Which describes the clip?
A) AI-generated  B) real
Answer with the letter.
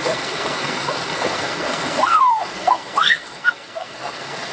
A